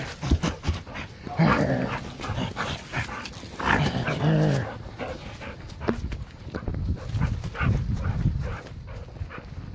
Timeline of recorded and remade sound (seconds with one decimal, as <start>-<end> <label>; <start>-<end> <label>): 0.0-9.7 recorded